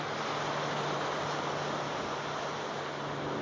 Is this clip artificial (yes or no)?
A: no